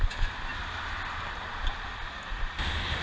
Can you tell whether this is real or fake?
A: real